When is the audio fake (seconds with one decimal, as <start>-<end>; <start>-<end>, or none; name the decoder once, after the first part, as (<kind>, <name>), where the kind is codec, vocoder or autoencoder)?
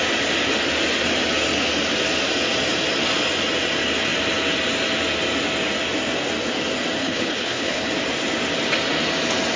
7.0-7.8 (codec, HILCodec)